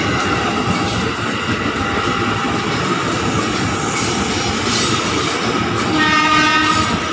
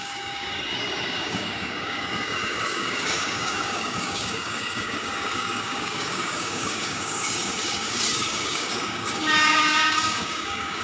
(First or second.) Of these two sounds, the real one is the first